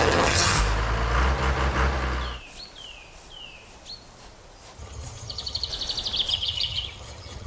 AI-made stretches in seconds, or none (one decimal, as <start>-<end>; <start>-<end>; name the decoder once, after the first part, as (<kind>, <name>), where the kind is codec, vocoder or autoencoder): 0.0-0.6 (vocoder, HiFi-GAN); 4.8-5.7; 6.3-7.5